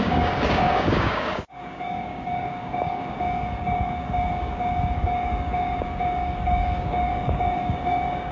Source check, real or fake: fake